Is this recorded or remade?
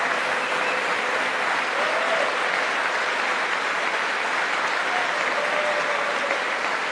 recorded